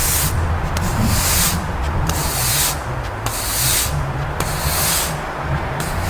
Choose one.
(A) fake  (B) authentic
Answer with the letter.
B